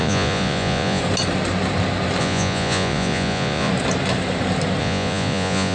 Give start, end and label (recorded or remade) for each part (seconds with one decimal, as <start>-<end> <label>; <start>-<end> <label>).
0.0-1.0 remade; 1.0-2.2 recorded; 2.2-3.7 remade; 3.7-4.8 recorded; 4.8-5.7 remade